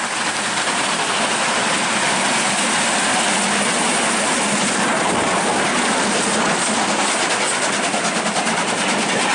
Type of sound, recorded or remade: recorded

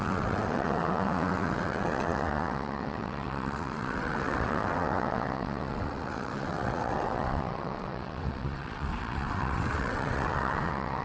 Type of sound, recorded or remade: remade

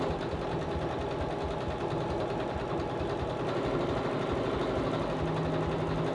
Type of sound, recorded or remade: recorded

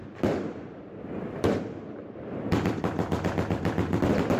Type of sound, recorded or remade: remade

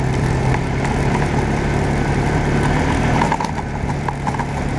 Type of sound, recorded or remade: remade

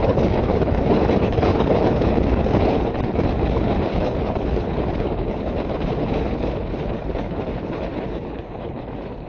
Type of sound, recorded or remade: remade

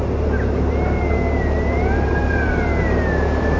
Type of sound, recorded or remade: recorded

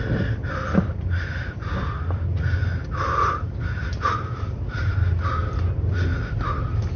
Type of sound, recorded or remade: remade